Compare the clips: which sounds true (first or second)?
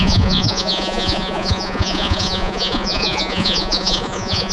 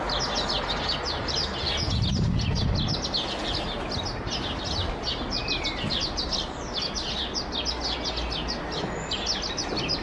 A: second